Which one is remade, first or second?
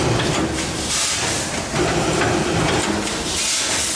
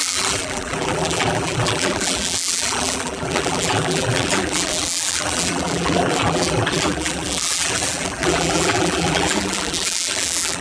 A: second